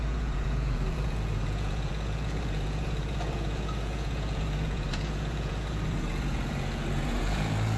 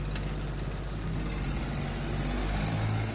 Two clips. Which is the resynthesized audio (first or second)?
first